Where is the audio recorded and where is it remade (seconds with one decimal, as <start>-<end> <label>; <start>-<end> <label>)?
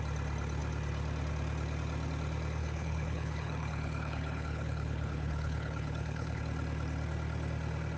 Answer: 0.0-2.6 recorded; 2.6-6.4 remade; 6.4-8.0 recorded